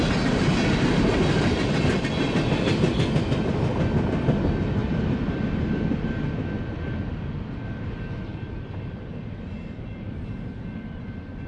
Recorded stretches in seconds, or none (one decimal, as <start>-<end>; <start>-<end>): 0.0-4.8; 6.3-8.3